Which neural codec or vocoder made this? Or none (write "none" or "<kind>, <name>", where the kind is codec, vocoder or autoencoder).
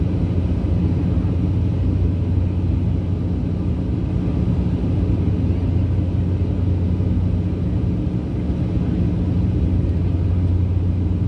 none